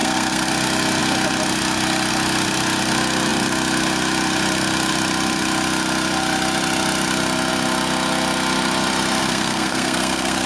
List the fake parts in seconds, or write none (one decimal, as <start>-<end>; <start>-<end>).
0.0-0.5; 9.2-10.5